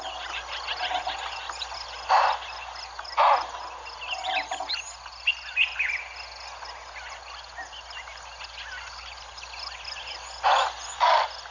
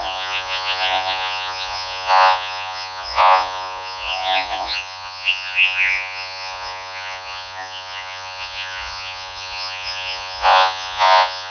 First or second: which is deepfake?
second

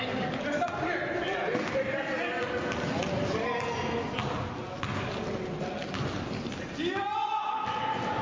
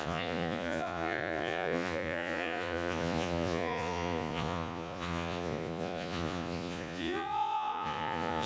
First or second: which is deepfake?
second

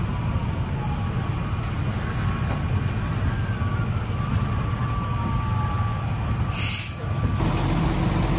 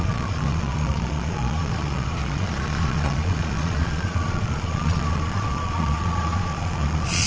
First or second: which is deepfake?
second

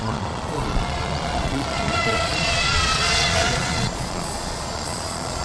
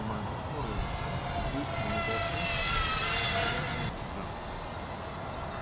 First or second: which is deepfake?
first